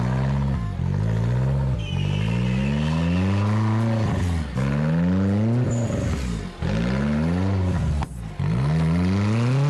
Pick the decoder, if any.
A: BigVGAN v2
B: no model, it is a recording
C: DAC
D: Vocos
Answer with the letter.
B